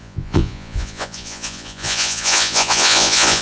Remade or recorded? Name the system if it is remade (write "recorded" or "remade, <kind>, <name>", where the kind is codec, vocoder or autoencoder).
remade, vocoder, Vocos